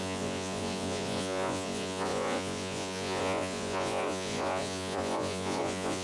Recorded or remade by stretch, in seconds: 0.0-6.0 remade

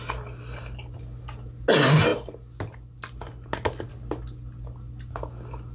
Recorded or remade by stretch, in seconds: 0.0-5.7 recorded

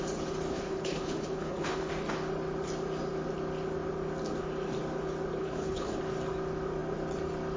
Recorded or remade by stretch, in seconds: 0.0-0.5 recorded; 0.5-1.9 remade; 1.9-5.4 recorded; 5.4-6.0 remade; 6.0-7.6 recorded

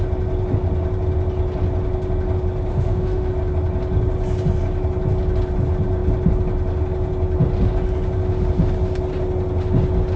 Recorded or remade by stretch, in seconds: 0.0-2.7 recorded; 2.7-3.3 remade; 3.3-10.2 recorded

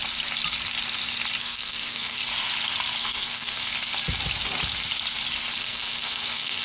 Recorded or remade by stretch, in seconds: 0.0-1.4 recorded; 1.4-2.2 remade; 2.2-3.0 recorded; 3.0-3.6 remade; 3.6-5.6 recorded; 5.6-6.6 remade

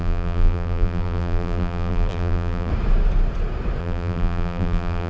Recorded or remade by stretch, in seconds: 0.0-2.7 remade; 2.7-3.8 recorded; 3.8-5.1 remade

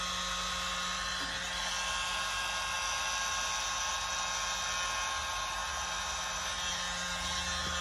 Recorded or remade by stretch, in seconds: 0.0-7.8 recorded